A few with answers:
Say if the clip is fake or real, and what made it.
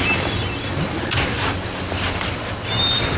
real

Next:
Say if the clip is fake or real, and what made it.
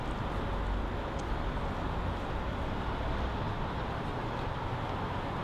real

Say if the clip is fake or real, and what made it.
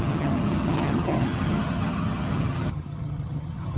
fake, vocoder, HiFi-GAN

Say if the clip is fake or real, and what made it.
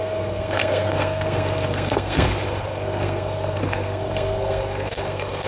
fake, codec, SNAC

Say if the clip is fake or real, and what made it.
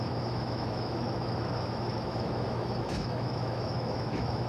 fake, autoencoder, DAC-VAE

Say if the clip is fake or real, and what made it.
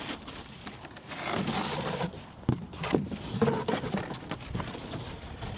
real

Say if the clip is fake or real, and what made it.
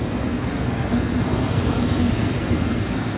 fake, codec, SNAC